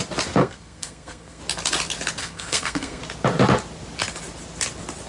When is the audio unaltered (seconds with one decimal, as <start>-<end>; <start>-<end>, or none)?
0.0-0.4; 1.4-2.2; 3.0-5.1